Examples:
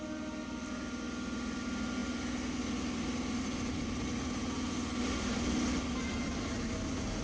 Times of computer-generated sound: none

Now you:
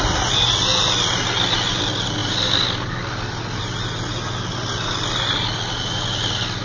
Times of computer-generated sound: none

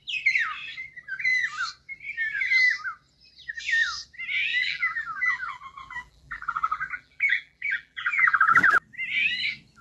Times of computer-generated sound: 4.5-8.7 (vocoder, BigVGAN v2)